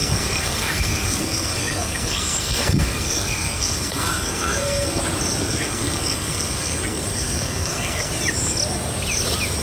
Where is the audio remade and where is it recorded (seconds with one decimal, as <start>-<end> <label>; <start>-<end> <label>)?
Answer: 0.0-5.0 remade; 5.0-5.4 recorded; 5.4-8.1 remade; 8.1-9.6 recorded